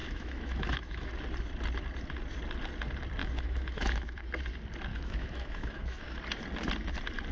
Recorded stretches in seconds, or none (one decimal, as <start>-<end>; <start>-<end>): 1.1-3.2; 4.2-4.9; 6.2-7.3